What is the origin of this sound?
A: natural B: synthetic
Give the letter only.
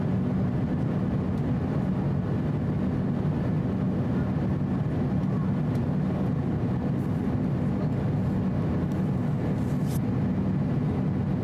A